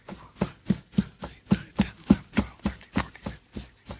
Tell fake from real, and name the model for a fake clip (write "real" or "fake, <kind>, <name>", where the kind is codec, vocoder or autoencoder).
real